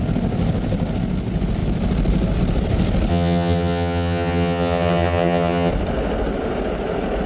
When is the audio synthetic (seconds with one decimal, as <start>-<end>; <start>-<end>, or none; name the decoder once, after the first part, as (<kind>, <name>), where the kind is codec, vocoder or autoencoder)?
3.1-5.7 (vocoder, HiFi-GAN)